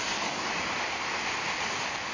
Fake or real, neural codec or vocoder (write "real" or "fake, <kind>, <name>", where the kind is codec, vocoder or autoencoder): real